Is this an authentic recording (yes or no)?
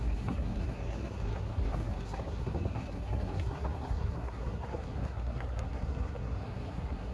no